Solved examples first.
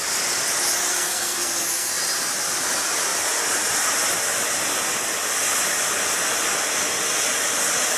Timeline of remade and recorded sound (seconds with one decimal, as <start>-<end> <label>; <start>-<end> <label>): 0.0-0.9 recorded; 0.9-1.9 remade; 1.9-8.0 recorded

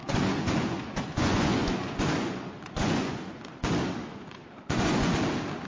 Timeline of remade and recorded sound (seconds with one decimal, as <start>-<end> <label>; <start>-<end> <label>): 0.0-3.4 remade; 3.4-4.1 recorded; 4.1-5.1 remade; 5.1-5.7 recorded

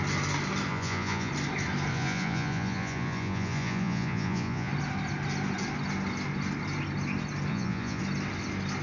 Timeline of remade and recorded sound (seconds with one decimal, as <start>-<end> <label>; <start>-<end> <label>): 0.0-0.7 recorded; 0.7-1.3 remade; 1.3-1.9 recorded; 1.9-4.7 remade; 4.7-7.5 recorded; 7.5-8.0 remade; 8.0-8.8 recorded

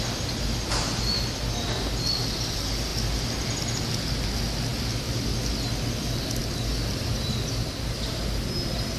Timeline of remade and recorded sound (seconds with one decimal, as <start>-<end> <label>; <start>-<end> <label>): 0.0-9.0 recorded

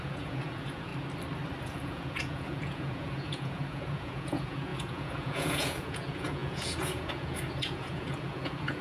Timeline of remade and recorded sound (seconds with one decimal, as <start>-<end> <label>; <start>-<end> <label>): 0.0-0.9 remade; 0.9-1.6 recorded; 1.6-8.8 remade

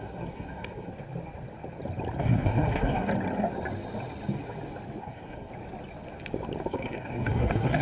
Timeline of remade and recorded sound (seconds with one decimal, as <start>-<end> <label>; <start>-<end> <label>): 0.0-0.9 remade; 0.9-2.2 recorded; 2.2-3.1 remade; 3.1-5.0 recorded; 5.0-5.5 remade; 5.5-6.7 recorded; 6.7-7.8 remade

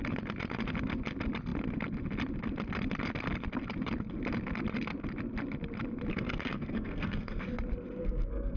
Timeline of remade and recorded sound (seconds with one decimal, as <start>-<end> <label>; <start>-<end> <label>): 0.0-6.1 recorded; 6.1-7.4 remade; 7.4-8.0 recorded; 8.0-8.6 remade

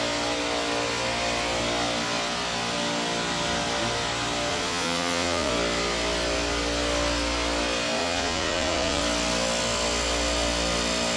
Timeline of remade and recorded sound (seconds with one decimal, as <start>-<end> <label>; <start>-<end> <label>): 0.0-4.5 recorded; 4.5-5.5 remade; 5.5-8.0 recorded; 8.0-9.0 remade; 9.0-11.2 recorded